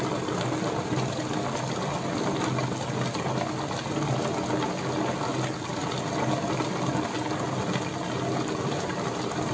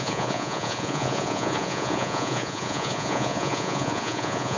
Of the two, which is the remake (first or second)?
second